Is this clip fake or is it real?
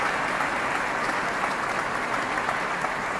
real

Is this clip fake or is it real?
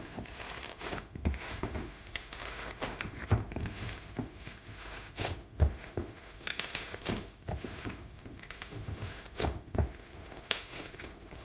fake